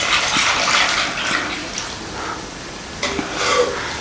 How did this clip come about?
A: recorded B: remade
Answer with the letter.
A